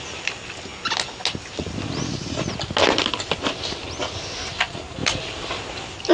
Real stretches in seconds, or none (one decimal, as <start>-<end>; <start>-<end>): 0.0-6.1